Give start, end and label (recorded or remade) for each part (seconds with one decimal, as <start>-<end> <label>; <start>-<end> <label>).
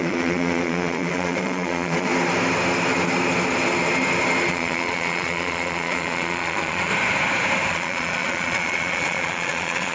0.0-2.1 remade; 2.1-4.5 recorded; 4.5-6.9 remade; 6.9-7.7 recorded; 7.7-9.9 remade